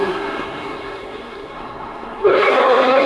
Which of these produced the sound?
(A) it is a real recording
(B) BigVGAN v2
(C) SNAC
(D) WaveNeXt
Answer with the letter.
C